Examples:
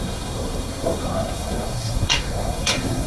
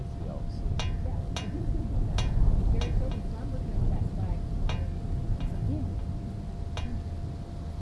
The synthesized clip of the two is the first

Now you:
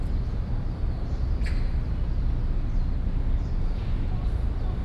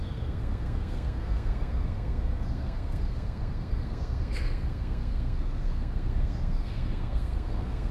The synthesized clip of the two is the second